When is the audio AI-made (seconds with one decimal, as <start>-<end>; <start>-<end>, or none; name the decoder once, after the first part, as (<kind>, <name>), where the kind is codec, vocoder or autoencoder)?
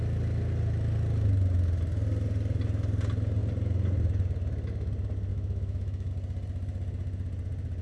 5.3-6.1 (autoencoder, DAC-VAE)